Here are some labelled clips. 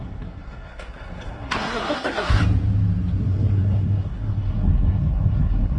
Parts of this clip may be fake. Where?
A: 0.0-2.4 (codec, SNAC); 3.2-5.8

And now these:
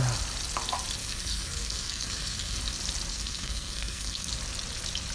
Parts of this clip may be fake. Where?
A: 1.0-2.6 (codec, SNAC); 3.1-4.3

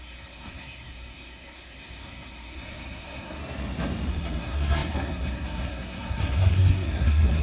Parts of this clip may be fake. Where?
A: 0.0-3.4 (codec, SNAC); 4.1-7.4

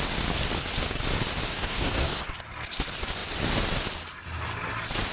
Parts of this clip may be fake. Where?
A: 1.5-2.3 (codec, SNAC)